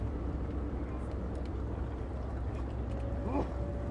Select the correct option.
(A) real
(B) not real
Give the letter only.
A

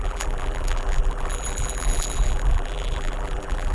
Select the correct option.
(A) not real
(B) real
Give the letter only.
A